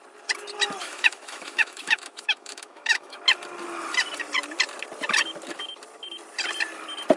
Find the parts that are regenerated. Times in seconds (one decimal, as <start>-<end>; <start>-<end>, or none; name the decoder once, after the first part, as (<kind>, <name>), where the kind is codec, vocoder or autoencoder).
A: 0.8-3.2 (autoencoder, DAC-VAE)